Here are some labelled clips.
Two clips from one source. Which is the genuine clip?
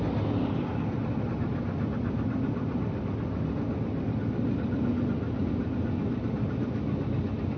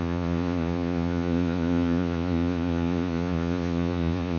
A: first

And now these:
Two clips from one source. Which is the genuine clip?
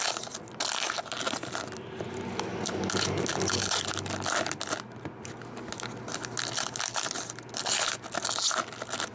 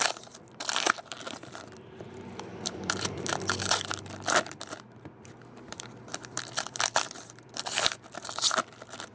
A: first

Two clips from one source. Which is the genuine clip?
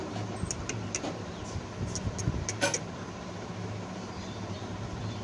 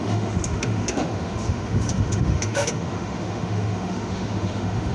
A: first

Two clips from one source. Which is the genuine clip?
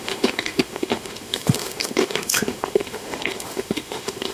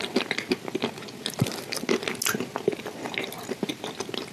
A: second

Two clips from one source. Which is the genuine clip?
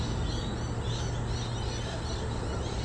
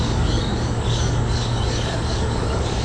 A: first